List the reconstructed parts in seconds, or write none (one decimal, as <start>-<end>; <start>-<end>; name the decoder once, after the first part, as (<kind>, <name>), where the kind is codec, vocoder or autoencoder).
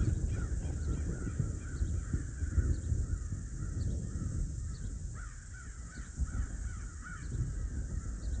none